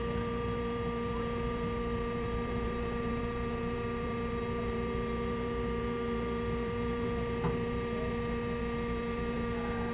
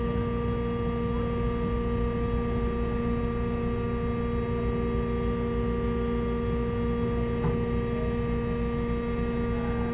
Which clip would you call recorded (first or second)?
second